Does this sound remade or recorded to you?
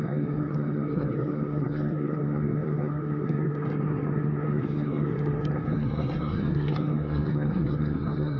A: remade